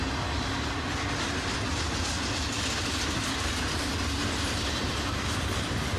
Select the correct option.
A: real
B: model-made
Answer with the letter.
A